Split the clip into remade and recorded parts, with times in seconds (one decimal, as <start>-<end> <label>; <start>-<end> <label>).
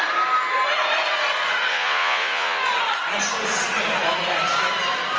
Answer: 0.0-1.7 recorded; 1.7-2.6 remade; 2.6-5.2 recorded